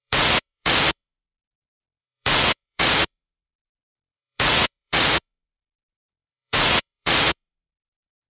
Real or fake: fake